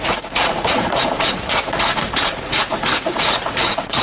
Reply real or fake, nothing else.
fake